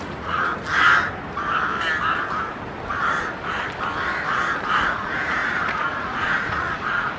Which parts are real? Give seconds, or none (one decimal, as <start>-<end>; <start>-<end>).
0.5-4.8